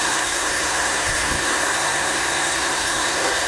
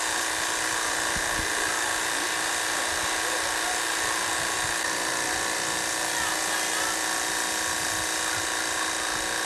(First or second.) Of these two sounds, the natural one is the second